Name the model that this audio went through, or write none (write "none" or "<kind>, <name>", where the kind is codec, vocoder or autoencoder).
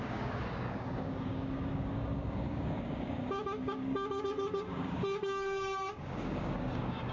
codec, DAC